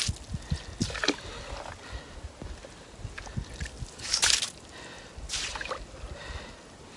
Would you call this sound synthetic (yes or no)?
no